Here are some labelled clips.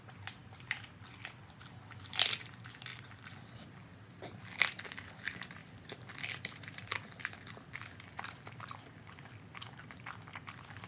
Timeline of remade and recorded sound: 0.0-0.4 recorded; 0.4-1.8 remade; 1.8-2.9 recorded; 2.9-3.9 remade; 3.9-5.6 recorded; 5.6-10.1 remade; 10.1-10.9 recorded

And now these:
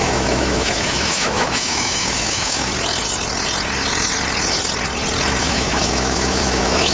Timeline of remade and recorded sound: 0.0-2.7 remade; 2.7-5.4 recorded; 5.4-6.9 remade

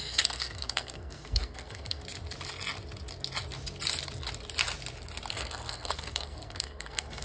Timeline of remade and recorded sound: 0.0-2.0 remade; 2.0-5.3 recorded; 5.3-7.2 remade